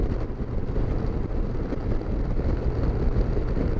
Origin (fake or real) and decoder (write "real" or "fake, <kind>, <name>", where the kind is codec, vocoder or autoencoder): real